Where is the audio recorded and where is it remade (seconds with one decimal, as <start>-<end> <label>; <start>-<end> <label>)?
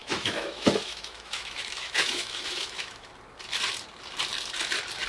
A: 0.0-3.1 remade; 3.1-5.1 recorded